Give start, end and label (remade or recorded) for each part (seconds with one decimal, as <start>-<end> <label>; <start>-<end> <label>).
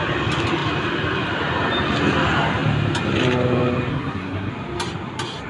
0.0-3.9 recorded; 3.9-4.5 remade; 4.5-5.5 recorded